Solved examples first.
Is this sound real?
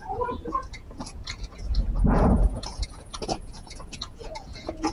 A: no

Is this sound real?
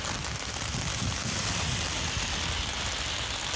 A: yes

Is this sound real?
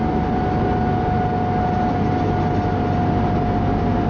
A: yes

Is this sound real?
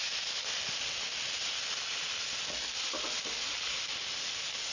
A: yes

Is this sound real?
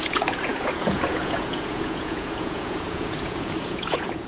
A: no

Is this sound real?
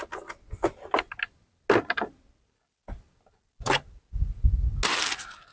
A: yes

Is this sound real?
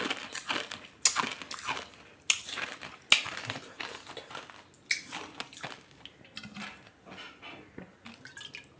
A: yes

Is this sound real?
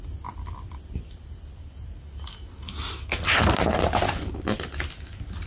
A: yes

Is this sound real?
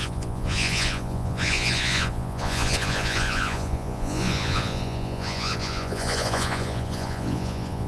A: no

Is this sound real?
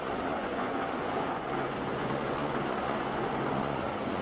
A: no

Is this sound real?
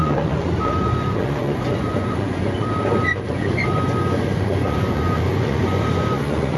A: no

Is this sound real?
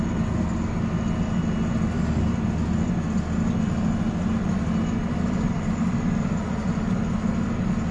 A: yes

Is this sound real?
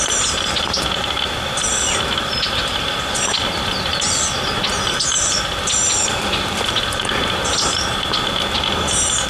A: yes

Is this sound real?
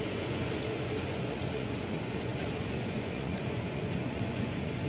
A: no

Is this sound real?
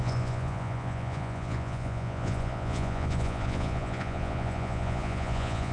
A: no